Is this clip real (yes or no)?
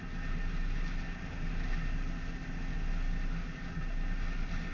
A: yes